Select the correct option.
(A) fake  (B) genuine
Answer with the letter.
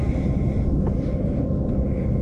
B